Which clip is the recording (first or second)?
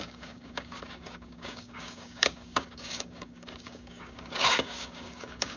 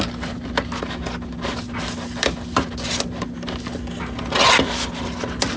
second